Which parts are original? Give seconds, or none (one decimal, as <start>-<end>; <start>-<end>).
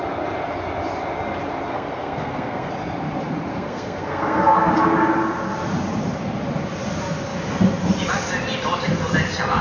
0.0-1.7; 2.7-3.5; 4.7-9.6